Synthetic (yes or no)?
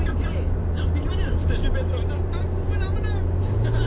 no